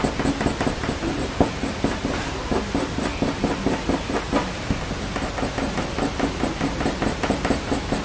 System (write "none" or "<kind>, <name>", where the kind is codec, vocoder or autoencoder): none